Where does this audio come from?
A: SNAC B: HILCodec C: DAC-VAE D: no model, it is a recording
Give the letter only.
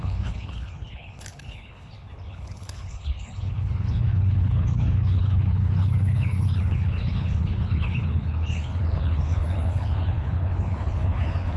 B